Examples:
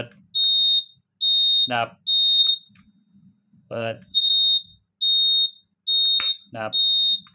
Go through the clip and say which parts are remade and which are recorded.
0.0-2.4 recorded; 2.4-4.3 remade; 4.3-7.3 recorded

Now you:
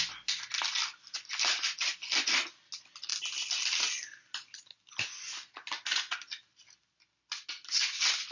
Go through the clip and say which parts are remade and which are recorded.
0.0-8.3 recorded

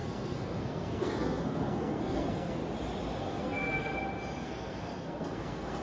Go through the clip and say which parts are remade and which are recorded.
0.0-2.6 remade; 2.6-3.2 recorded; 3.2-3.9 remade; 3.9-4.4 recorded; 4.4-5.8 remade

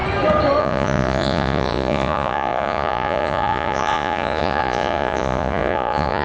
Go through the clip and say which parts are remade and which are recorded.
0.0-0.6 recorded; 0.6-6.2 remade

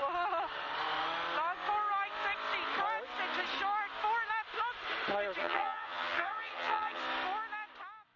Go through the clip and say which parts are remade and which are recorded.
0.0-5.4 recorded; 5.4-7.0 remade; 7.0-8.2 recorded